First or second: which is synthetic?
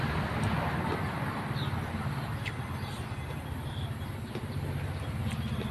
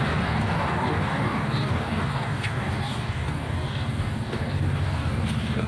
second